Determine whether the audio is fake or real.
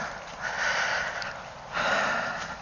real